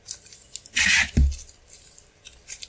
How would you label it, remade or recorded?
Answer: recorded